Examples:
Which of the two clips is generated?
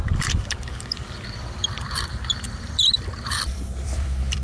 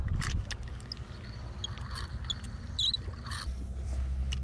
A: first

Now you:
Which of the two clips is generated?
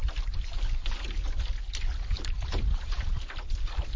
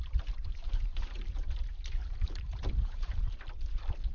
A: second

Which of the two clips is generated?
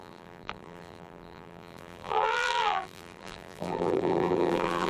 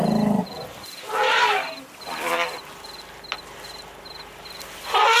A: first